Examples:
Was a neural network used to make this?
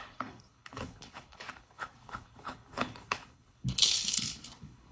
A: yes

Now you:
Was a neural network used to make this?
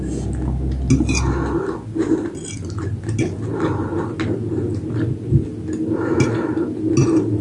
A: no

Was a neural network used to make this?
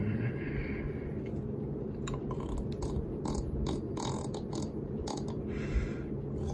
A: no